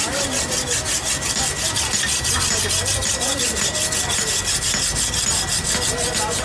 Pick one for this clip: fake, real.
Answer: real